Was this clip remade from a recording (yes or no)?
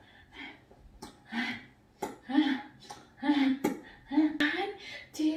no